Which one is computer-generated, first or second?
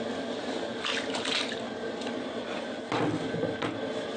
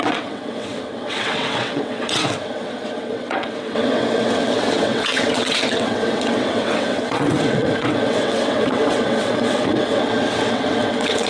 second